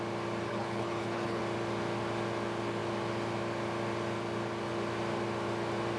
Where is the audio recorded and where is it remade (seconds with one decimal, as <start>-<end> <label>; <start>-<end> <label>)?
0.0-0.5 recorded; 0.5-1.4 remade; 1.4-6.0 recorded